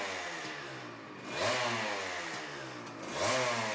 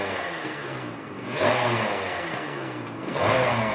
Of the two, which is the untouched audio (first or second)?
first